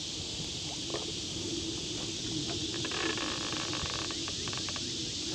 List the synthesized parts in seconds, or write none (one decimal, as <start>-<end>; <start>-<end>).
none